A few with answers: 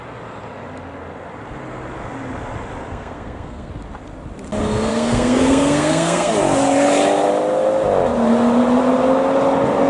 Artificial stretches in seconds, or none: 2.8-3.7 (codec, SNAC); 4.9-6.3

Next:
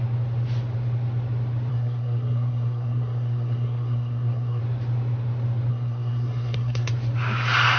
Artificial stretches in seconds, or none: 1.7-4.6 (codec, SNAC); 5.7-6.9

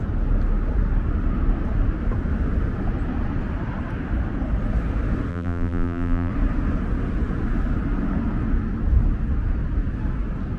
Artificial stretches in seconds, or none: 5.3-6.3 (vocoder, BigVGAN v2)

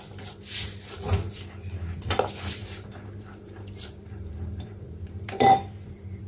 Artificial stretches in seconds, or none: 2.6-6.3 (vocoder, BigVGAN v2)

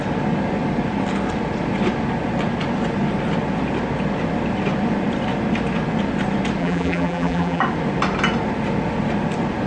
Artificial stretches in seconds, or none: 6.6-7.6 (vocoder, BigVGAN v2)

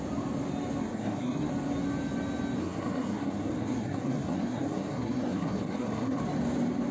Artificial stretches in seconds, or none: 0.8-1.5 (codec, SNAC); 2.6-6.2

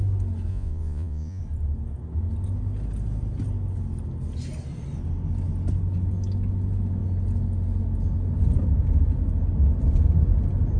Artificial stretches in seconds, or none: 0.5-1.4 (vocoder, Vocos)